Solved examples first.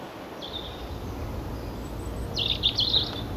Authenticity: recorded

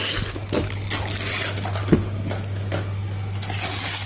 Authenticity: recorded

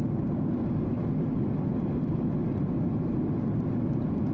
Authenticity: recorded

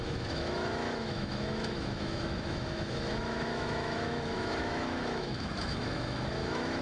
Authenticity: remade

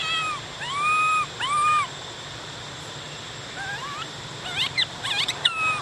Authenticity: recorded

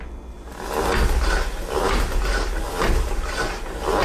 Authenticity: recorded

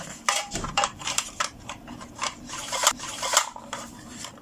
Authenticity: remade